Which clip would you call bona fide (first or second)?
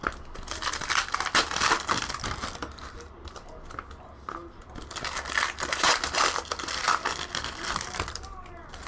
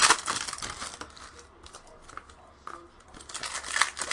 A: second